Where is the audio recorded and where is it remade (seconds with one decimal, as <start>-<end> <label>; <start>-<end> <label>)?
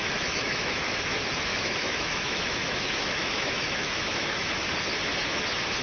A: 0.0-0.9 remade; 0.9-1.5 recorded; 1.5-4.7 remade; 4.7-5.8 recorded